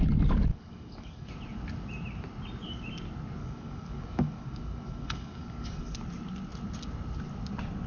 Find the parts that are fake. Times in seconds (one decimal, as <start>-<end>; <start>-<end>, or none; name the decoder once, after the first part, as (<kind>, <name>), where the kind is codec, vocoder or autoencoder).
0.5-1.3 (codec, DAC); 3.4-6.0